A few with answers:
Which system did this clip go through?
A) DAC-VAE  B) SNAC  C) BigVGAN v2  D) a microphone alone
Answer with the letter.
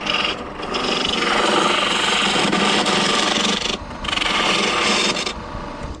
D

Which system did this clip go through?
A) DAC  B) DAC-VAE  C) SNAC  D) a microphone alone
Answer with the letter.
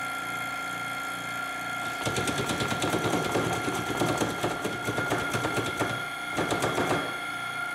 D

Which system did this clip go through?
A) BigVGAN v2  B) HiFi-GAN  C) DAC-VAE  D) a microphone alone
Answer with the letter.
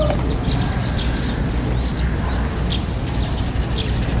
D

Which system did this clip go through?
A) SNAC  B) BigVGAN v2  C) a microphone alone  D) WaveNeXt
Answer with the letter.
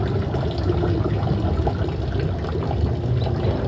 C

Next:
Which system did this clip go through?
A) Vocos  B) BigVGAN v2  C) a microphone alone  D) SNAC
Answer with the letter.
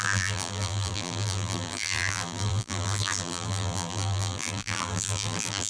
B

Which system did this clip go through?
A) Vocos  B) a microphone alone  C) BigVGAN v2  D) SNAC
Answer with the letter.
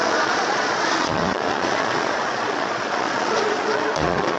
A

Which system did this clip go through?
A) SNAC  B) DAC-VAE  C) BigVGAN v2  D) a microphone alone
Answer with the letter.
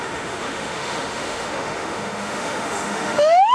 B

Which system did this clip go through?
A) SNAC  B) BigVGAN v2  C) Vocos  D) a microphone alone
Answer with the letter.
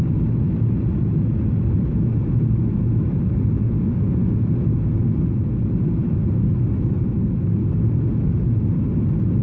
D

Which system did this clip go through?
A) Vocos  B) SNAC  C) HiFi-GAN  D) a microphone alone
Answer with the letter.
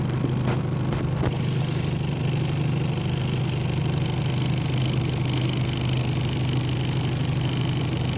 D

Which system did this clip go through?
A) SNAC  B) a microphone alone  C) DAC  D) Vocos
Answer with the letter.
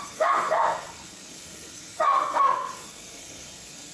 A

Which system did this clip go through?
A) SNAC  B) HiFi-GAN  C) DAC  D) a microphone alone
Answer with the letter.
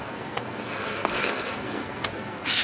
A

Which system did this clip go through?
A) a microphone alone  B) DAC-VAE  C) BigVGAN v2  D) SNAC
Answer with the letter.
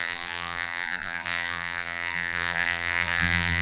C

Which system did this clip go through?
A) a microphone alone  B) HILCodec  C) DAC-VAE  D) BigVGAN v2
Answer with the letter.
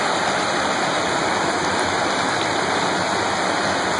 A